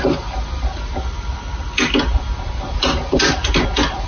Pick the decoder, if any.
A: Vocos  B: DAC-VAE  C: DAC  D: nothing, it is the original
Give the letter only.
D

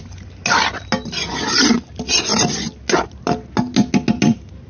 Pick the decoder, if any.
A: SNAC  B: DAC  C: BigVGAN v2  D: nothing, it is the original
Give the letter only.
D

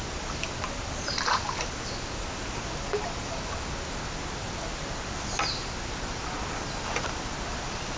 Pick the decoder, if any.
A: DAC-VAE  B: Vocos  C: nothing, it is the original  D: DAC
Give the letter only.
C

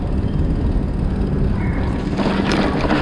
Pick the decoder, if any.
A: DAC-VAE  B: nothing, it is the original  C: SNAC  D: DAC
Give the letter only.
B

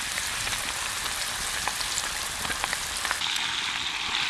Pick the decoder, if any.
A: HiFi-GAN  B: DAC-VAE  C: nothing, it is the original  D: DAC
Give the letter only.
C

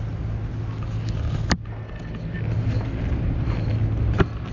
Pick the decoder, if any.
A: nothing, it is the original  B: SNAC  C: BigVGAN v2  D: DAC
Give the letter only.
A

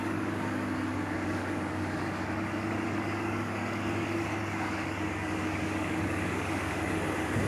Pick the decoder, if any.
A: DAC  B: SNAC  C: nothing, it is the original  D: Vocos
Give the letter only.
A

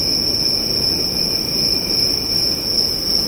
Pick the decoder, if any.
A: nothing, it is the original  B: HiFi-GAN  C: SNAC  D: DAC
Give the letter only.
A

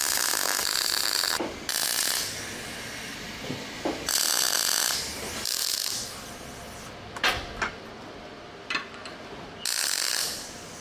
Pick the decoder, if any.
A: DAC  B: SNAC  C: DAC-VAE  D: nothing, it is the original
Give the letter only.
D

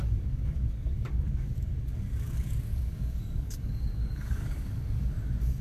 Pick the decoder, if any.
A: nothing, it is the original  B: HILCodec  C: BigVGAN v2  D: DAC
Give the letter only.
D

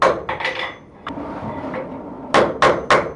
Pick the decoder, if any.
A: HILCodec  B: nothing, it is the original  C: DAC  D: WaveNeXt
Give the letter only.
B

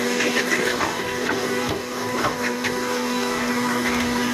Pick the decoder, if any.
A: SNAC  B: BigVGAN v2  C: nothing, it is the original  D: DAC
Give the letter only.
D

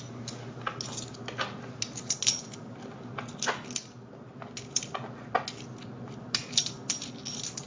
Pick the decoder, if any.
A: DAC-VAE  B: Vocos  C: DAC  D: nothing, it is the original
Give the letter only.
D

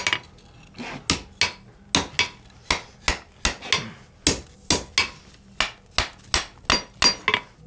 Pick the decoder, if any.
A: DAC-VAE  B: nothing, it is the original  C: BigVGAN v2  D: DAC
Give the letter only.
B